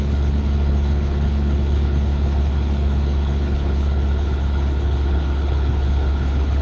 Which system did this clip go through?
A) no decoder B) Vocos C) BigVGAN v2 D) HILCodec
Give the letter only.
D